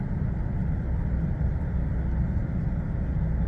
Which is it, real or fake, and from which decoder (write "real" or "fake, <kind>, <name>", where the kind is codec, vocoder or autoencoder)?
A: real